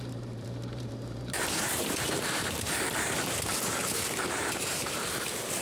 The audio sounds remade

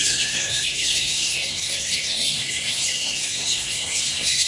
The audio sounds remade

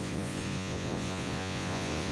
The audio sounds remade